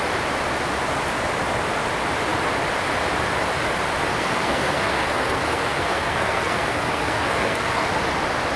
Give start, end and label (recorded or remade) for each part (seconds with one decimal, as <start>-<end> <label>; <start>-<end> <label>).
0.0-4.1 recorded; 4.1-7.9 remade; 7.9-8.6 recorded